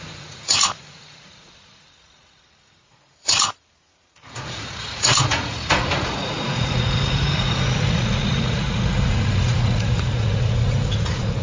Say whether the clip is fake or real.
fake